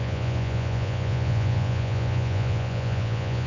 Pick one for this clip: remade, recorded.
remade